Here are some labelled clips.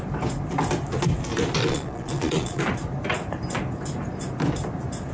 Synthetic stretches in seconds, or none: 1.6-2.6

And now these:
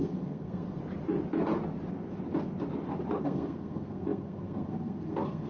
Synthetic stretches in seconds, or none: 0.0-0.8; 3.2-5.5